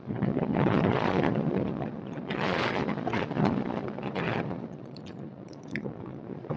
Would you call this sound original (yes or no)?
no